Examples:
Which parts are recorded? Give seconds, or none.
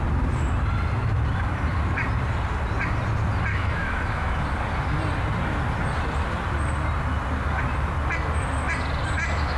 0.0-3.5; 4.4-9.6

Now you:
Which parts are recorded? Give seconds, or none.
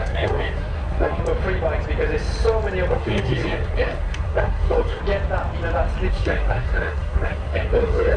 1.2-2.9; 5.0-6.1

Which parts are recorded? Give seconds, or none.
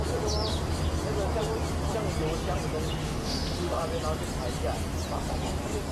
0.0-3.0; 3.8-5.9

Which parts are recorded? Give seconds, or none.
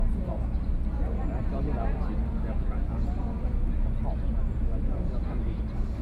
0.0-6.0